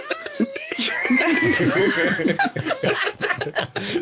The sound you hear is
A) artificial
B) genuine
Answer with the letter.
A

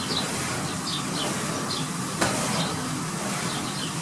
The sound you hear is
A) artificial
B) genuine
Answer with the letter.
B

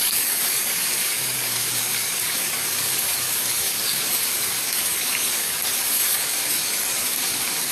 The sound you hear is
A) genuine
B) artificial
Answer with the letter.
B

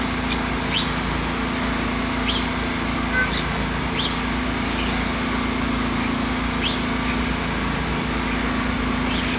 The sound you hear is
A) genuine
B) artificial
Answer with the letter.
A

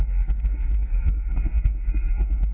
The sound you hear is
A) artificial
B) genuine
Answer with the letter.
A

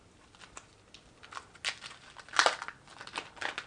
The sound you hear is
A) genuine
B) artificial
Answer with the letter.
A